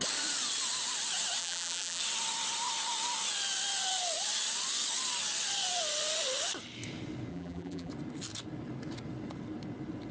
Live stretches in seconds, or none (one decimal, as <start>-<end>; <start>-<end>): 0.0-1.4; 2.0-7.3; 7.9-10.1